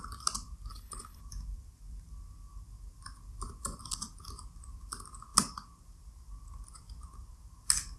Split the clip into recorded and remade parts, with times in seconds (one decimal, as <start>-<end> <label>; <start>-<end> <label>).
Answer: 0.0-0.7 recorded; 0.7-1.2 remade; 1.2-8.0 recorded